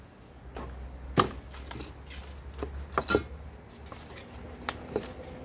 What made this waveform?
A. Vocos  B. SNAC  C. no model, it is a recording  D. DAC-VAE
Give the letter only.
C